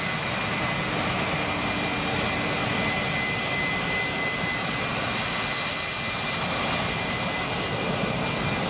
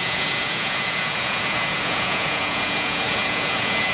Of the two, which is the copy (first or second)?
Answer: second